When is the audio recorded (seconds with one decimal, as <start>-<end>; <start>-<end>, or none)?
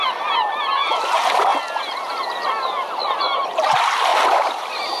0.0-4.1